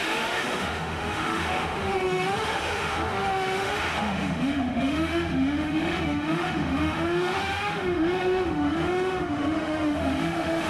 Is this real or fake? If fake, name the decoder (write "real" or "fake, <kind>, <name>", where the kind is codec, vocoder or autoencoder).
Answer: fake, autoencoder, DAC-VAE